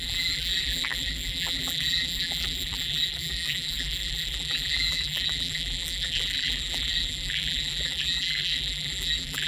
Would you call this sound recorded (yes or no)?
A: no